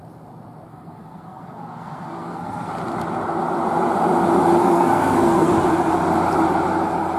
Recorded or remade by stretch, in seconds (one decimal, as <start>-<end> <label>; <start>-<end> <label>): 0.0-0.7 recorded; 0.7-2.7 remade; 2.7-4.6 recorded; 4.6-5.5 remade; 5.5-7.2 recorded